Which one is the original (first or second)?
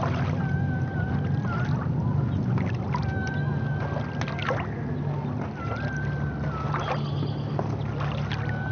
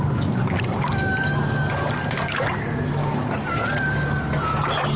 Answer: first